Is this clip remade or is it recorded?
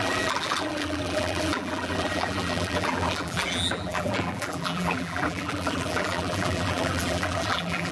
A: remade